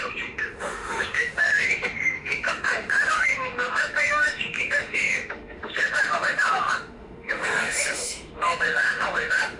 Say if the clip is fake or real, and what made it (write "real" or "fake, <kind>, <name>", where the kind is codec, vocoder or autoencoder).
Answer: fake, autoencoder, DAC-VAE